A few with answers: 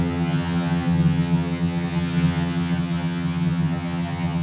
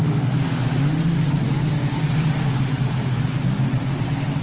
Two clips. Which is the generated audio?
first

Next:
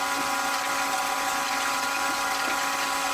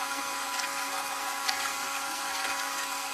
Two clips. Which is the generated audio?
second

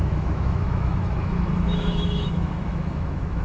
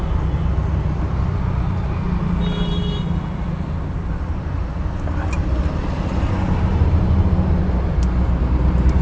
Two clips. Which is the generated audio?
first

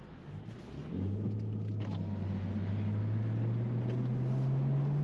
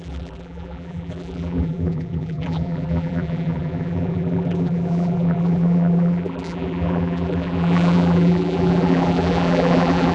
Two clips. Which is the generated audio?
second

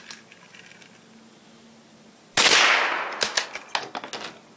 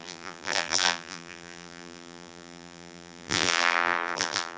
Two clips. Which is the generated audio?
second